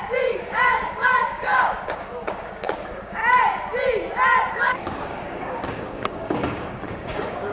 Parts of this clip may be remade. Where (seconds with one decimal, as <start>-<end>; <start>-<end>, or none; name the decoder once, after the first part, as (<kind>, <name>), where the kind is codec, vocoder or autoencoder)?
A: 0.0-3.2 (codec, DAC); 4.5-7.5